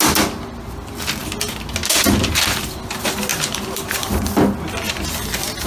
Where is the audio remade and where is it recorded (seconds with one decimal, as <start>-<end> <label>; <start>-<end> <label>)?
0.0-3.3 recorded; 3.3-4.2 remade; 4.2-5.7 recorded